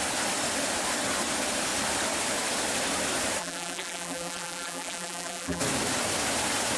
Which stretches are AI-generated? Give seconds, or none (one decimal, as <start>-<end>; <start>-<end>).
3.4-5.6